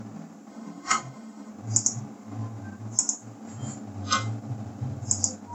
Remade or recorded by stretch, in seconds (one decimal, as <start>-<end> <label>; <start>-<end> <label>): 0.0-0.5 recorded; 0.5-1.5 remade; 1.5-5.5 recorded